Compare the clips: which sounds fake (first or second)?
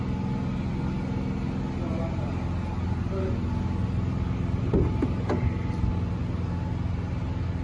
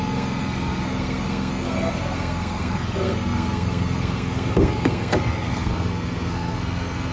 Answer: second